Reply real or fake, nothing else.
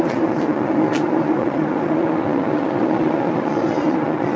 fake